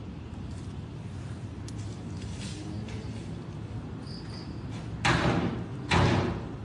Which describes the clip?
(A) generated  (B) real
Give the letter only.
B